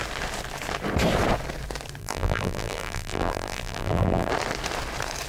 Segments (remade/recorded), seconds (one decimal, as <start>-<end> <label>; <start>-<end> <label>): 0.0-2.0 recorded; 2.0-4.3 remade; 4.3-5.3 recorded